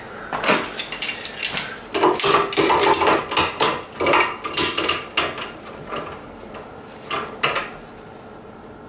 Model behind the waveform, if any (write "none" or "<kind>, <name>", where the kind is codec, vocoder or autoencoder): none